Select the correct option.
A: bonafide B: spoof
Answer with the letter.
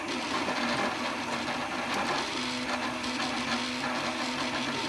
A